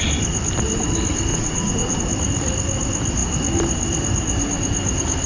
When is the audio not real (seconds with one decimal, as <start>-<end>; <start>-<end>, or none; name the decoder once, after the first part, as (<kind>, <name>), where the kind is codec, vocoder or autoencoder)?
1.3-2.0 (vocoder, Vocos)